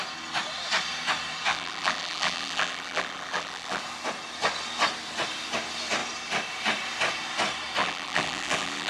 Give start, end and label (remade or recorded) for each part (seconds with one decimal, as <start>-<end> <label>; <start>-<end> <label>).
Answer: 0.0-1.5 recorded; 1.5-3.8 remade; 3.8-7.8 recorded; 7.8-8.9 remade